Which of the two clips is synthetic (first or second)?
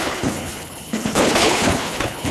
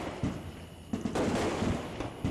first